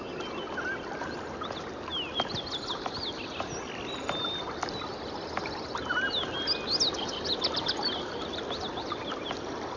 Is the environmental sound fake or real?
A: real